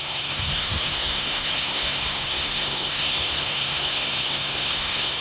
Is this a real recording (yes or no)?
no